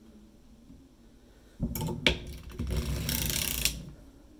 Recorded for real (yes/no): yes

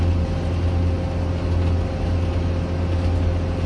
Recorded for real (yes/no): yes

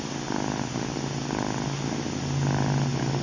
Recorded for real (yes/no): yes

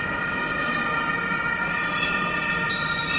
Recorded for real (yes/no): yes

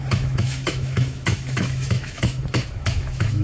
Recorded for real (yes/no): no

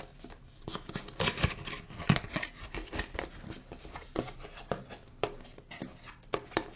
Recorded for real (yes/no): yes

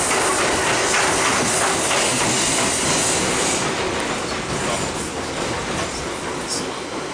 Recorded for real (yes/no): yes